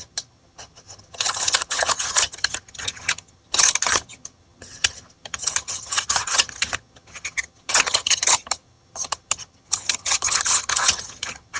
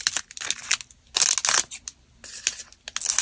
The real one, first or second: second